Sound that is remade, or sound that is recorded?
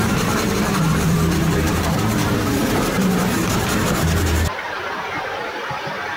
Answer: remade